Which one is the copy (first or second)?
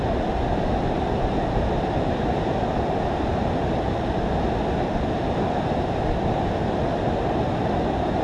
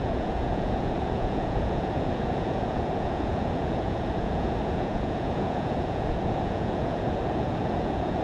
second